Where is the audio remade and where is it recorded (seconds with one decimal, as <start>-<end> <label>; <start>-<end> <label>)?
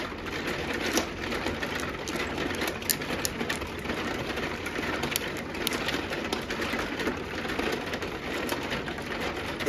0.0-9.7 recorded